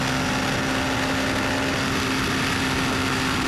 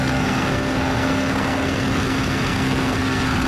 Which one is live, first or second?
first